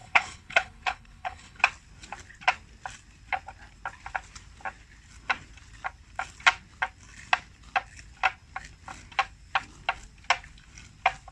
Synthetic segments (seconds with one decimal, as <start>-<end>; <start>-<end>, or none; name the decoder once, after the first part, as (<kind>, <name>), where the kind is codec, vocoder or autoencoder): 0.0-1.6 (codec, HILCodec)